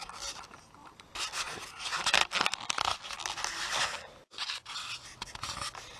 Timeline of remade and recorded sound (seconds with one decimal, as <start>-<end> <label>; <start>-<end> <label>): 0.0-6.0 recorded